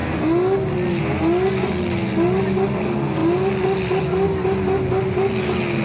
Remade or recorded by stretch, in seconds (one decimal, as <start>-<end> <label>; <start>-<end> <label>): 0.0-5.8 recorded